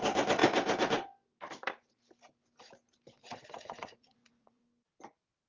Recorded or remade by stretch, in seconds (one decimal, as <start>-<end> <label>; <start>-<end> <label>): 0.0-3.2 recorded; 3.2-4.6 remade; 4.6-5.5 recorded